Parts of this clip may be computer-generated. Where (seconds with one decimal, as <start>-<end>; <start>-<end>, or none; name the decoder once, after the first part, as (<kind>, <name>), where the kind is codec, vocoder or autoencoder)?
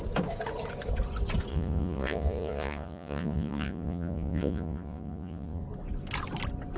1.5-5.6 (vocoder, Vocos)